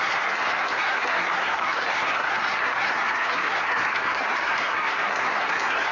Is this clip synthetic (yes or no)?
yes